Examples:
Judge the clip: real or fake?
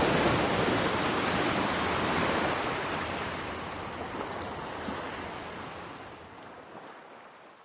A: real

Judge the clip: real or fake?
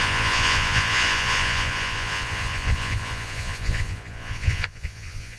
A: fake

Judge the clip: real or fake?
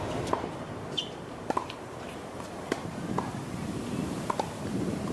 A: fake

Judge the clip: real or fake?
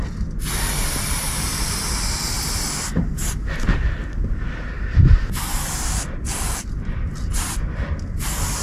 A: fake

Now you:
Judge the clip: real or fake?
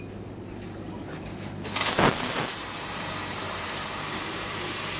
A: real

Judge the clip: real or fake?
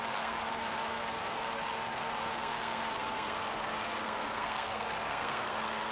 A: fake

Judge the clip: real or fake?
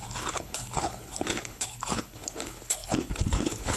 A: fake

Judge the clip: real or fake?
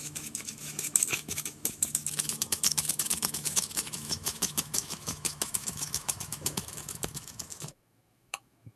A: fake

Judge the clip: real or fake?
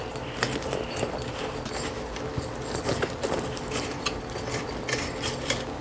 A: real